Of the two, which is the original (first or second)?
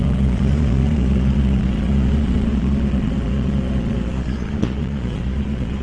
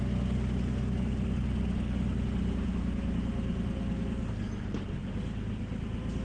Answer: second